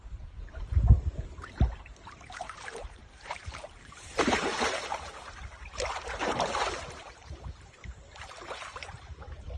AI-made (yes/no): yes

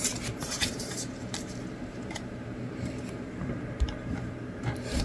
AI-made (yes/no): yes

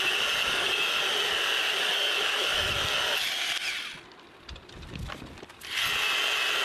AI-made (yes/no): no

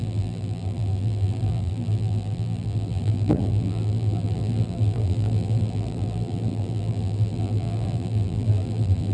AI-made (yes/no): yes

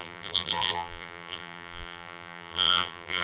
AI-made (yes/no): yes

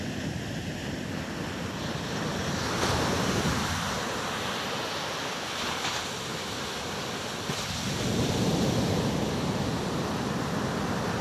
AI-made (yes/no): no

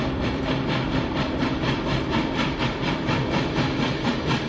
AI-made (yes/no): yes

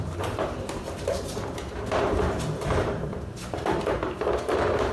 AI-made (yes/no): yes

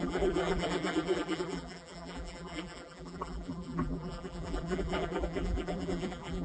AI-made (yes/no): yes